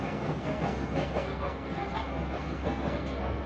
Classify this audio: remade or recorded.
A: remade